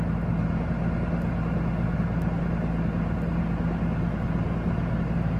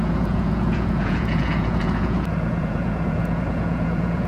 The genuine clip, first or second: first